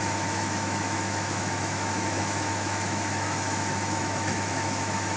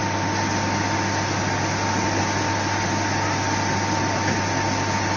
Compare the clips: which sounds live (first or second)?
second